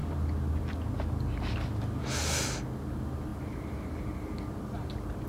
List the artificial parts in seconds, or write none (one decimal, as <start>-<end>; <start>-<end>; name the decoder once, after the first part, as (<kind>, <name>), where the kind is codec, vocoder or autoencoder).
none